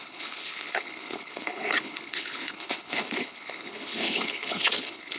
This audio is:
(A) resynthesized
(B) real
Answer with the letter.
A